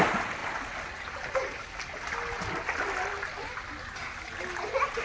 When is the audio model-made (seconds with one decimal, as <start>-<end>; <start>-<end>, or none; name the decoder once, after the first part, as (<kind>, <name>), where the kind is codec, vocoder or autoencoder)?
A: none